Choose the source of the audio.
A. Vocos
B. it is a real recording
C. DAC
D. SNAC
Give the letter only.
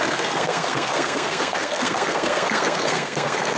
D